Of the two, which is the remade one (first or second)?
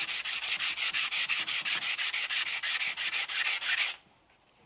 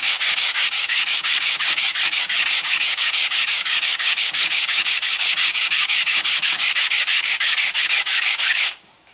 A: second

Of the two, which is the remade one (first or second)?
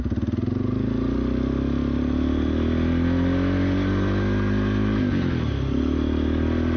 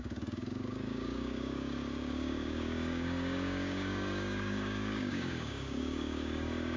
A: second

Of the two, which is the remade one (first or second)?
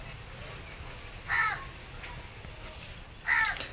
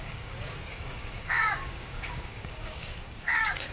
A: second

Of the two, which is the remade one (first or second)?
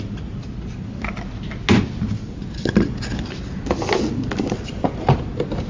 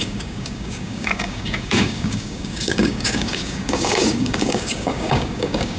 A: second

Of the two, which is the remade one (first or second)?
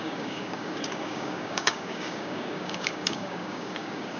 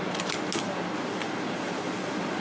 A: first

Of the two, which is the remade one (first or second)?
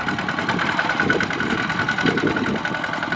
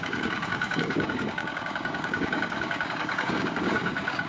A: second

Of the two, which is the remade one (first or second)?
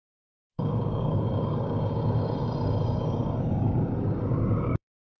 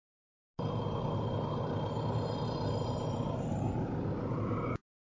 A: first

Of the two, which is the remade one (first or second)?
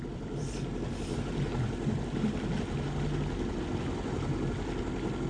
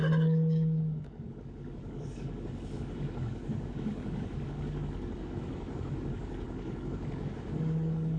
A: second